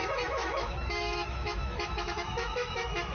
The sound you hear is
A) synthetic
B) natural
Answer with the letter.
A